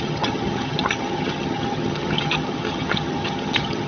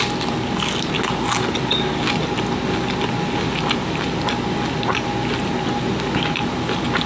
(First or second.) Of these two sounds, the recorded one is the second